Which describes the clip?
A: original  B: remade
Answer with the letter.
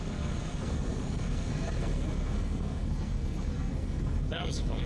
B